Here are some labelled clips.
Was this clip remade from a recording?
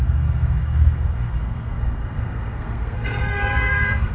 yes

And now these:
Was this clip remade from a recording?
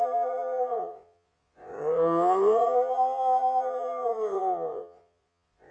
yes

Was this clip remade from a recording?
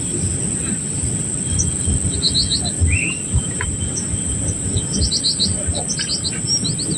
no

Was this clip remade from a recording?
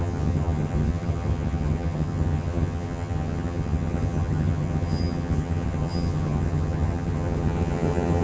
yes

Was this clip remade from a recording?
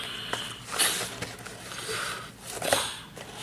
no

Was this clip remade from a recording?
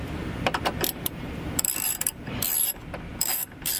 yes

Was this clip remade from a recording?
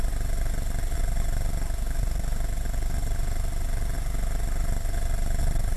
no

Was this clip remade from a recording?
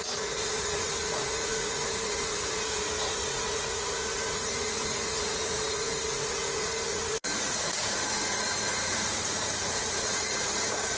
yes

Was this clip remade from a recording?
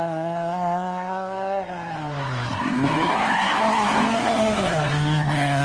yes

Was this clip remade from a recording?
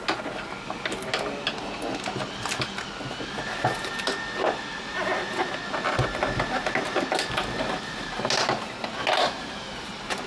no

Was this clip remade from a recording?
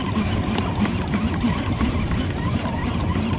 yes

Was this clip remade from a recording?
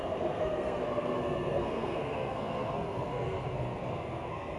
yes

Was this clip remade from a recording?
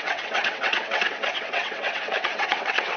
yes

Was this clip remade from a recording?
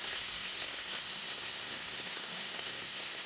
yes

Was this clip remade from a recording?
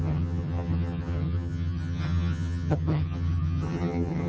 yes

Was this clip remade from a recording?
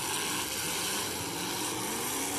no